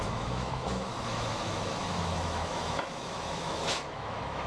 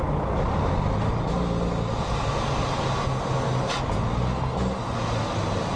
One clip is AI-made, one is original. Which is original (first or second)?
second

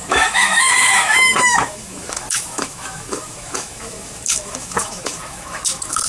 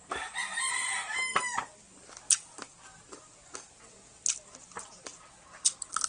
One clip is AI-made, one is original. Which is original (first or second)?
second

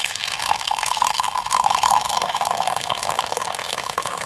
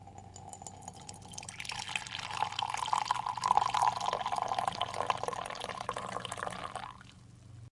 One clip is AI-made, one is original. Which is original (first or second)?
second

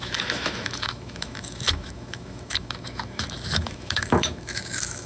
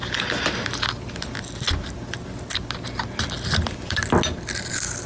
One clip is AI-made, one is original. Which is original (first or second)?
second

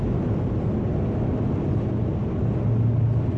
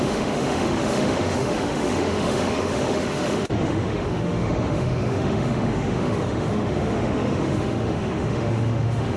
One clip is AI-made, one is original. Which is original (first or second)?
first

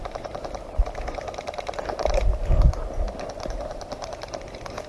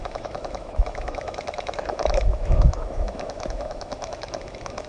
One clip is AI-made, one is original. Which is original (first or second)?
first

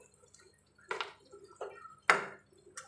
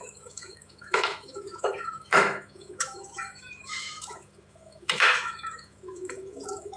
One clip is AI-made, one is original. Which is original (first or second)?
first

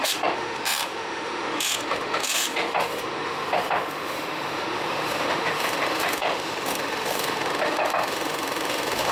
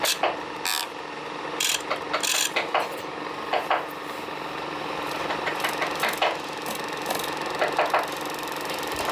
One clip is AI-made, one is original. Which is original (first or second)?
second